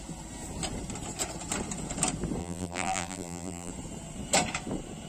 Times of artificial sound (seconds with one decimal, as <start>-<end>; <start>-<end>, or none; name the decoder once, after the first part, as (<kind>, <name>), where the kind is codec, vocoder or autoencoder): 2.4-3.7 (vocoder, BigVGAN v2)